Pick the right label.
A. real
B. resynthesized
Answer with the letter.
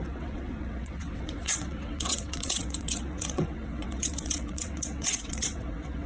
B